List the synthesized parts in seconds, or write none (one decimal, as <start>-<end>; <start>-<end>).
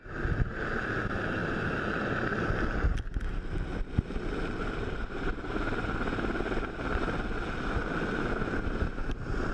none